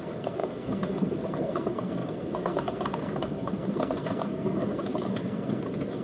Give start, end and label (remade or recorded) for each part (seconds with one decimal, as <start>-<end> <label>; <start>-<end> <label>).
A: 0.0-6.0 remade